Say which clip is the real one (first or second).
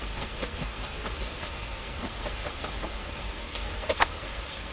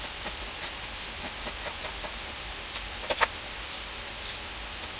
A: second